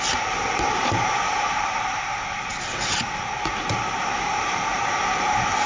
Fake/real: fake